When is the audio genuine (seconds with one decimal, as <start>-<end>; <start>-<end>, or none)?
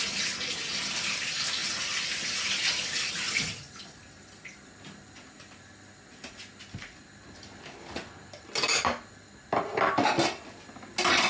0.0-11.3